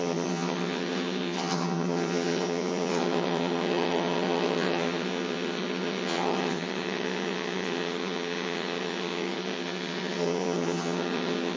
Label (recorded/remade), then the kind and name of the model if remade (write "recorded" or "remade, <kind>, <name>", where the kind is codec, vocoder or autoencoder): remade, vocoder, HiFi-GAN